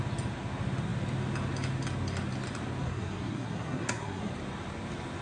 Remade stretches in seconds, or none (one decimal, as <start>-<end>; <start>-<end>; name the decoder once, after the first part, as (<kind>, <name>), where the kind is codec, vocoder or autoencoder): 2.8-4.3 (codec, SNAC)